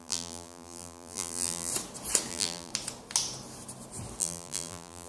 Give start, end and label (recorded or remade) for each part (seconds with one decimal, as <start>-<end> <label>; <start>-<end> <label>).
0.0-1.7 remade; 1.7-2.3 recorded; 2.3-2.7 remade; 2.7-4.2 recorded; 4.2-5.1 remade